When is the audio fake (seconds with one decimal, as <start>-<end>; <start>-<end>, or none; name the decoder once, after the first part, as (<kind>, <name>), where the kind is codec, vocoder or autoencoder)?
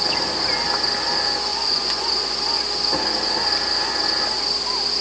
1.5-2.3 (vocoder, Vocos)